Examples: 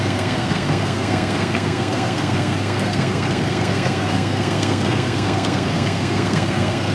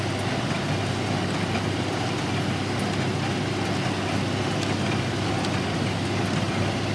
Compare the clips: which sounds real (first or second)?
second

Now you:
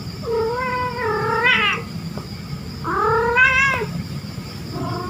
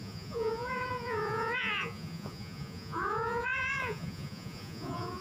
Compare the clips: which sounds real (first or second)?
first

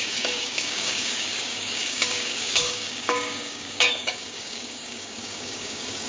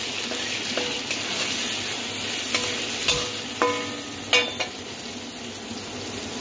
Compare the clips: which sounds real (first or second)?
second